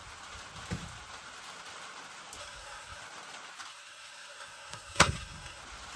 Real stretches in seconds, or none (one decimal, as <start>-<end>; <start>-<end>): 0.0-2.4; 3.0-3.7; 5.6-6.0